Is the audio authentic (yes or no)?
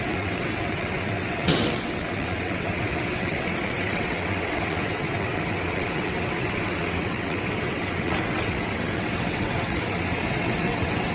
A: no